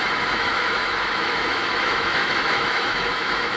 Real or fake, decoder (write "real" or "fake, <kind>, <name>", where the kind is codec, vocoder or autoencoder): fake, autoencoder, DAC-VAE